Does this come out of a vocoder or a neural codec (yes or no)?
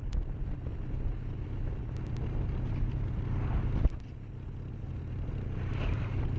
no